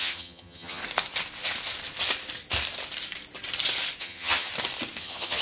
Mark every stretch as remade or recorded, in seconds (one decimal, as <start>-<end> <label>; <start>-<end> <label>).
0.0-0.8 remade; 0.8-4.0 recorded; 4.0-4.5 remade; 4.5-5.0 recorded; 5.0-5.4 remade